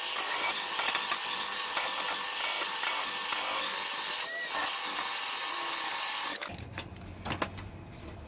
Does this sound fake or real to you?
real